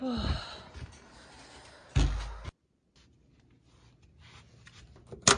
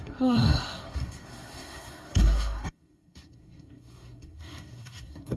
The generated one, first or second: second